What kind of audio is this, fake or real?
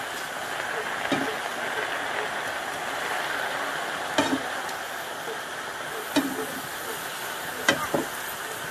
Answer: real